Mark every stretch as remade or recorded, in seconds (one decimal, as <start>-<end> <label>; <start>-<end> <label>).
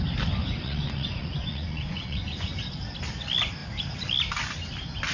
0.0-0.4 recorded; 0.4-2.6 remade; 2.6-5.1 recorded